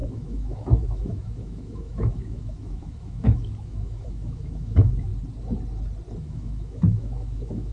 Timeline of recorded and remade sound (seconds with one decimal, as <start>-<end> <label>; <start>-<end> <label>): 0.0-5.1 remade; 5.1-6.2 recorded; 6.2-7.7 remade